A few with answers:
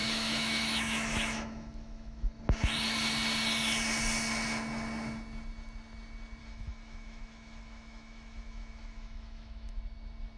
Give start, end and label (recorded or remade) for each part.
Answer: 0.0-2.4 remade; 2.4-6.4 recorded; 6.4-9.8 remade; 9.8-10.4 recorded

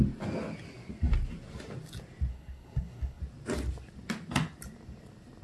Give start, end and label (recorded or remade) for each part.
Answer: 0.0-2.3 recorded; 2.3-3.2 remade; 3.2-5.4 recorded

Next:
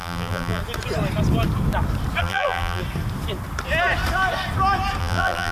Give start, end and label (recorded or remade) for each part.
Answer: 0.0-0.6 remade; 0.6-2.2 recorded; 2.2-2.8 remade; 2.8-5.0 recorded; 5.0-5.5 remade